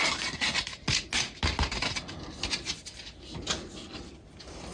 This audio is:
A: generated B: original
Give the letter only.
B